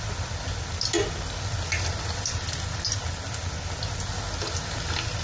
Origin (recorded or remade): recorded